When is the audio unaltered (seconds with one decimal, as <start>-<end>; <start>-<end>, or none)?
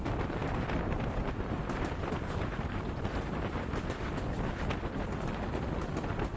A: 0.0-0.4; 3.8-6.4